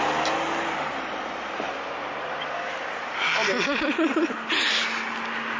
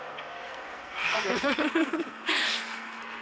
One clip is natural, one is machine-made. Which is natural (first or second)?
first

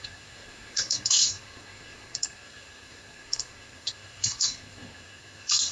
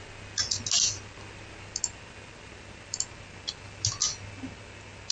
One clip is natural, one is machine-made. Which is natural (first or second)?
second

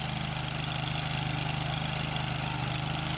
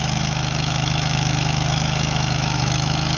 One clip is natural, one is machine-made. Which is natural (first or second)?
first